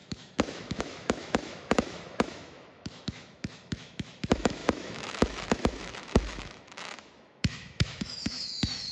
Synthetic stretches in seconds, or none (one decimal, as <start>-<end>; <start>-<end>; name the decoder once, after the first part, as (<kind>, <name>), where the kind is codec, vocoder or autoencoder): 0.0-8.9 (autoencoder, DAC-VAE)